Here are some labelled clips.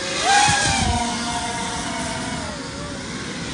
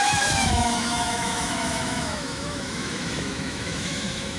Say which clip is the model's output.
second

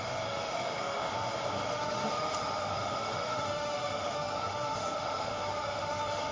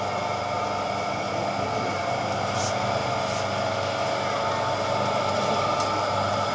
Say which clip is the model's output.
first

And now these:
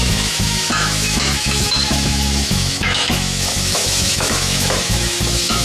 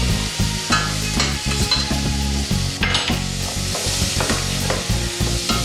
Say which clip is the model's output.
first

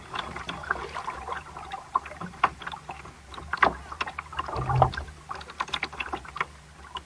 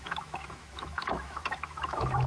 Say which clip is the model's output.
second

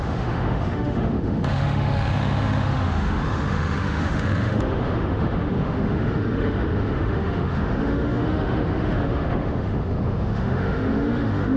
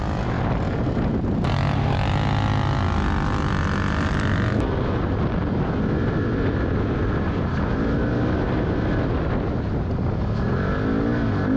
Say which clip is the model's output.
first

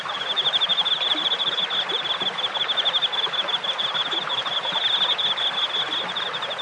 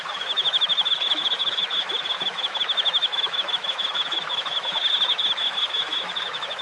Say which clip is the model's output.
second